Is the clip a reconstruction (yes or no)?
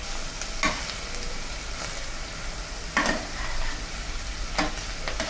no